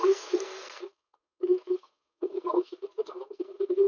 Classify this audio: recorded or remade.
remade